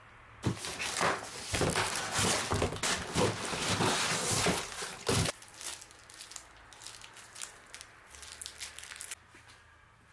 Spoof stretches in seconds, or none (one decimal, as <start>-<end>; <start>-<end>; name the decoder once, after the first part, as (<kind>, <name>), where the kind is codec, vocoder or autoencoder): none